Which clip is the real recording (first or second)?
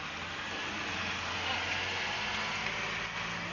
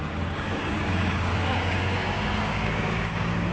first